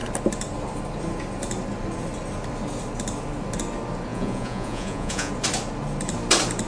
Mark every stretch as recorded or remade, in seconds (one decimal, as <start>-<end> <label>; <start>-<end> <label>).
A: 0.0-4.1 recorded; 4.1-5.3 remade; 5.3-6.7 recorded